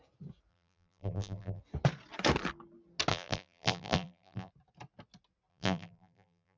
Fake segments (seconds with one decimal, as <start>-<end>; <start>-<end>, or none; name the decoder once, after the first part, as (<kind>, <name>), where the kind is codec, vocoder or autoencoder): 0.5-1.6 (vocoder, BigVGAN v2); 3.1-4.5; 5.5-6.6